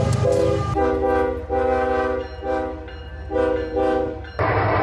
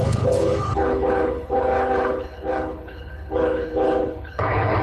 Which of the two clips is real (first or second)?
first